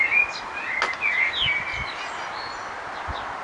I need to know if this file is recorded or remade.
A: recorded